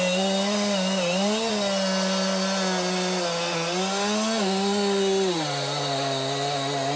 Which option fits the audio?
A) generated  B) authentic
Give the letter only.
B